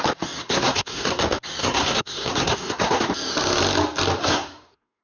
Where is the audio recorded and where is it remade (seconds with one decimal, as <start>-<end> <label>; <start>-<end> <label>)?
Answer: 0.0-0.4 recorded; 0.4-1.2 remade; 1.2-1.6 recorded; 1.6-3.1 remade; 3.1-4.2 recorded; 4.2-5.0 remade